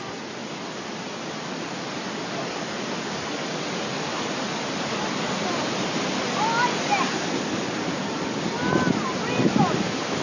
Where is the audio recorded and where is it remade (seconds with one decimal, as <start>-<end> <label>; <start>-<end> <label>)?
0.0-10.2 recorded